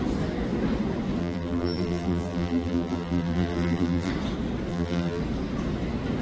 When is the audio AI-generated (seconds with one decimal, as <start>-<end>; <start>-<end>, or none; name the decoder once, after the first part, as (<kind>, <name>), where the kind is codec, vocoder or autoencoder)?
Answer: 1.2-4.1 (vocoder, BigVGAN v2); 4.7-5.2